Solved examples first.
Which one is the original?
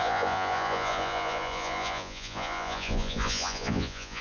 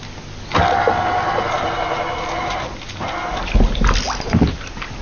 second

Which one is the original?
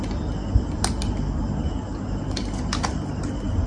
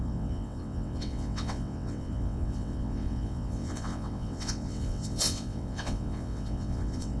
first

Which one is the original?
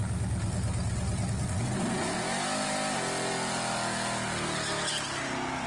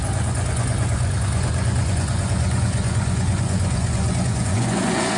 first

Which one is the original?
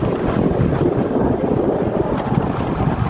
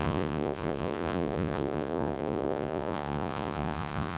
first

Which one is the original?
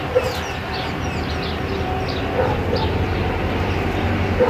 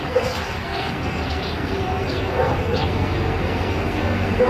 first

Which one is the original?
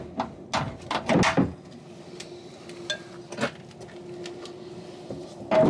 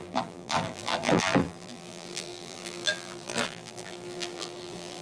first